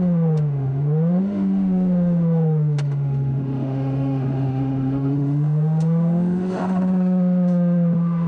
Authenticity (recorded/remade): remade